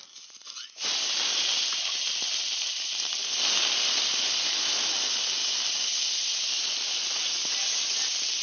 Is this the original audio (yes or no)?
yes